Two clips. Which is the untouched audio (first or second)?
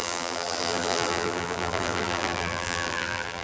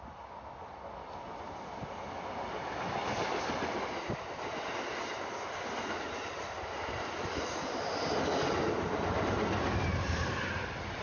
second